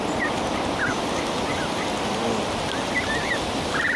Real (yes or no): yes